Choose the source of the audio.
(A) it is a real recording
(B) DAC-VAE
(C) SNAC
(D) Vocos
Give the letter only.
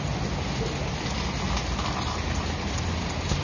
A